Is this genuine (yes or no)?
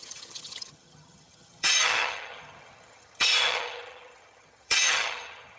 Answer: no